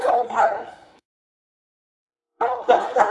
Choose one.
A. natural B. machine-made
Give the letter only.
B